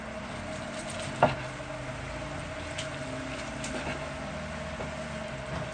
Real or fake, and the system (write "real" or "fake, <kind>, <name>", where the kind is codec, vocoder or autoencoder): real